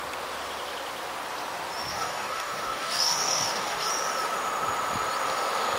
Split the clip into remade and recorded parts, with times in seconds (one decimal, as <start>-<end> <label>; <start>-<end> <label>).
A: 0.0-1.9 recorded; 1.9-3.9 remade; 3.9-5.8 recorded